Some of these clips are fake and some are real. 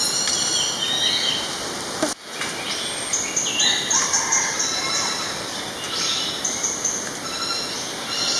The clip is real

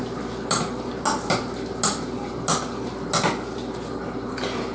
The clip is real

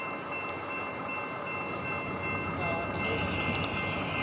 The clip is real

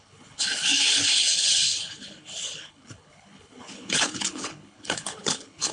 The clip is fake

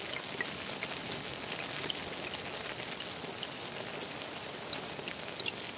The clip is real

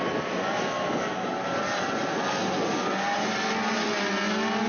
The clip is real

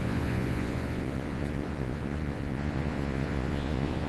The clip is fake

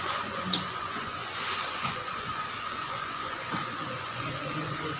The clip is fake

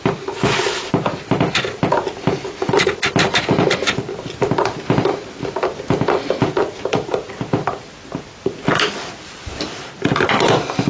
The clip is real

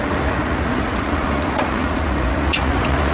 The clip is fake